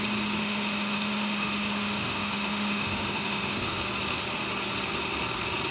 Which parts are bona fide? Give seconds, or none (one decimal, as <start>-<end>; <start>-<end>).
0.0-0.4; 3.8-5.7